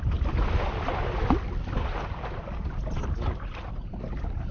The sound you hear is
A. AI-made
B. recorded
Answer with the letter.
B